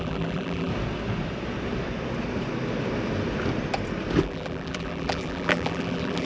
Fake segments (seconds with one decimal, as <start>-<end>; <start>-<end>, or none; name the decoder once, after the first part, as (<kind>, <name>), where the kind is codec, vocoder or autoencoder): 0.0-0.7 (vocoder, BigVGAN v2); 4.2-6.3